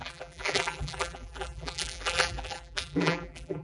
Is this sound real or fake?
fake